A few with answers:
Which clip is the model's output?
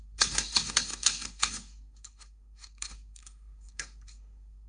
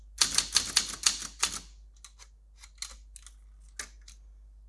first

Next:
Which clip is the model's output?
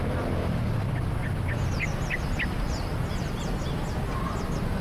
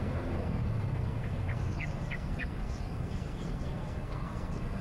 second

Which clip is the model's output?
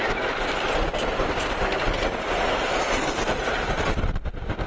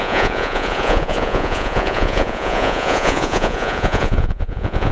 second